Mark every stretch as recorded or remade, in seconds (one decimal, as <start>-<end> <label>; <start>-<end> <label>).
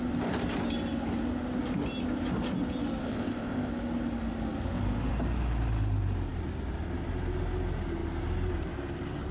0.0-3.0 recorded; 3.0-3.7 remade; 3.7-9.3 recorded